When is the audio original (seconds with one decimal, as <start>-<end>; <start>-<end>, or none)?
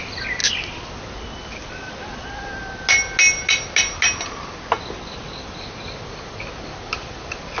0.0-7.6